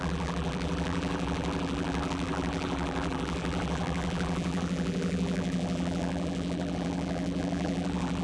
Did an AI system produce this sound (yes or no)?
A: yes